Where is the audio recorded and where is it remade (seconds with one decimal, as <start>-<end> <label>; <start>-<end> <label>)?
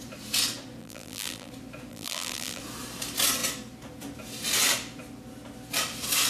0.0-0.8 recorded; 0.8-1.5 remade; 1.5-1.9 recorded; 1.9-2.6 remade; 2.6-6.3 recorded